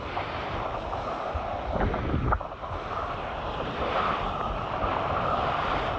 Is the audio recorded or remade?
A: recorded